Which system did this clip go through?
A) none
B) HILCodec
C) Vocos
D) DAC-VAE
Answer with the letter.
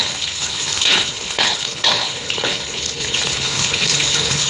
B